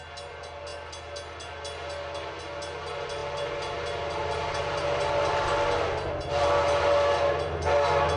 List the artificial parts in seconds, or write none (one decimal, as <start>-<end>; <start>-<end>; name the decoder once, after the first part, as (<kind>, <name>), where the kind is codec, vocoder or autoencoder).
none